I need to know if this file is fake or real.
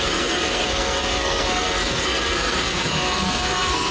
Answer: fake